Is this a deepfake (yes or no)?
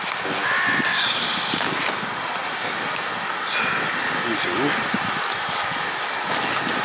no